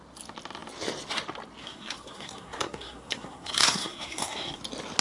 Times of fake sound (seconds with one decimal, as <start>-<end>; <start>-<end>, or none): 1.6-4.6